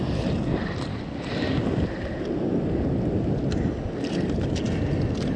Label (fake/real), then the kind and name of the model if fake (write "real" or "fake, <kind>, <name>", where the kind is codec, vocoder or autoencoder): real